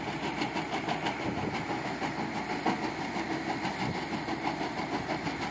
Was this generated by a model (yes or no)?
no